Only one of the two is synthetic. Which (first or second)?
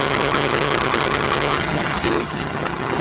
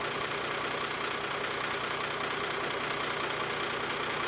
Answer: first